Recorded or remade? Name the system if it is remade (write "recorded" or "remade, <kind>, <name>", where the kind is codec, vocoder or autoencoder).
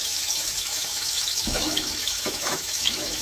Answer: remade, autoencoder, DAC-VAE